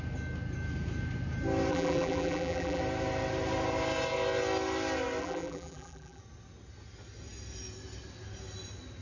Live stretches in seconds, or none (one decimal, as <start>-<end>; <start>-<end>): 0.0-1.7; 2.8-5.2; 6.2-9.0